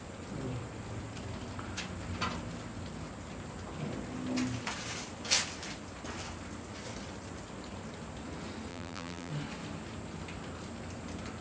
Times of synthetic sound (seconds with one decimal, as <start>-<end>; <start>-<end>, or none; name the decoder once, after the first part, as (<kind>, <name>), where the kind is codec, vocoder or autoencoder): 8.7-9.3 (vocoder, BigVGAN v2)